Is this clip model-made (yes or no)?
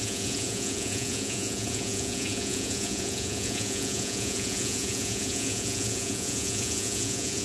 yes